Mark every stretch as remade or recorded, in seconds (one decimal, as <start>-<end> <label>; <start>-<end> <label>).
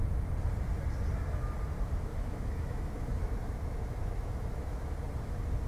0.0-2.1 recorded; 2.1-5.0 remade; 5.0-5.7 recorded